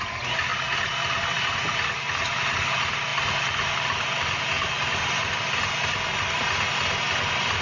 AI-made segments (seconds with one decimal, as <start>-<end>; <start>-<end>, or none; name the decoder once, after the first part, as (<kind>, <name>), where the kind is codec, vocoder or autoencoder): none